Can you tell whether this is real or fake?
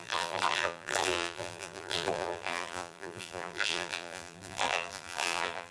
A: fake